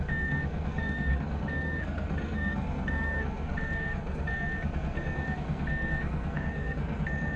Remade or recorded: remade